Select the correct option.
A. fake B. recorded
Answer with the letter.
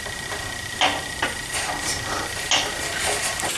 B